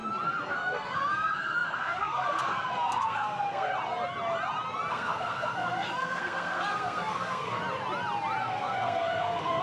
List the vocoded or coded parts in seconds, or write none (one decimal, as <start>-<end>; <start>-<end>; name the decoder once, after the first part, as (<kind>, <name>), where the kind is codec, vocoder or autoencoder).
0.5-3.7 (codec, SNAC); 4.9-7.6; 8.4-9.6